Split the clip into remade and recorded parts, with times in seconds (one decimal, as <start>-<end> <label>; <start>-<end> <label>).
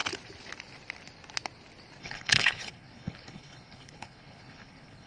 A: 0.0-2.0 recorded; 2.0-5.1 remade